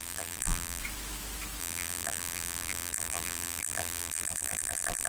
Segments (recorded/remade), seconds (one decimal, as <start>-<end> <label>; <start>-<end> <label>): 0.0-0.8 remade; 0.8-1.6 recorded; 1.6-5.1 remade